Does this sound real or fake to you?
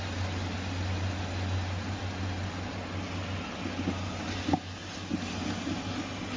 real